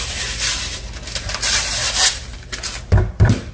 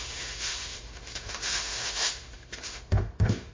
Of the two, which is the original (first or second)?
first